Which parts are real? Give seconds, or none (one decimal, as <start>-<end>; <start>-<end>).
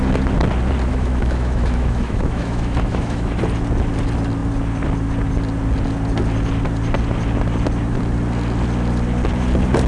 0.0-0.9; 3.4-9.9